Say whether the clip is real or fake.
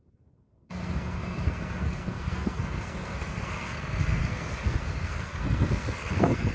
fake